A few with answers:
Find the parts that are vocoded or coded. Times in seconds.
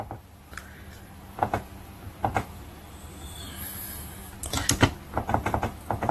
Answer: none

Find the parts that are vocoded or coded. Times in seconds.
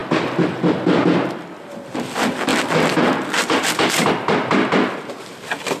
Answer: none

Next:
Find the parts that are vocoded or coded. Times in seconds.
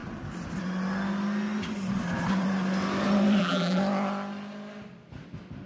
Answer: 3.4-3.8 (vocoder, BigVGAN v2)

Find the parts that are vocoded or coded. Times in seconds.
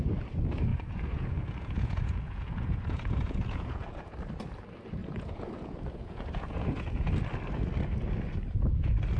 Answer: 0.7-4.2 (vocoder, Vocos); 5.0-7.1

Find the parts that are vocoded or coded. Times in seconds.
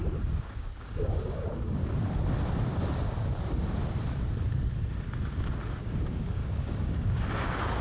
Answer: 0.0-1.8 (codec, DAC); 5.8-7.8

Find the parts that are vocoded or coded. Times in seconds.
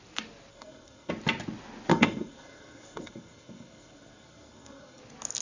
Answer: 0.5-1.1 (codec, SNAC); 1.9-5.0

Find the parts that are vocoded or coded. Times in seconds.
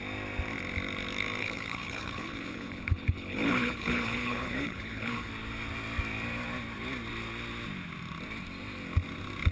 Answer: 1.4-5.3 (codec, HILCodec)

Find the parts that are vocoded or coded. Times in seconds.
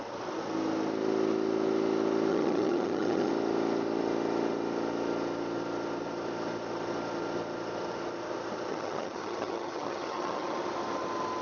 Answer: 2.3-3.3 (vocoder, HiFi-GAN); 8.7-10.6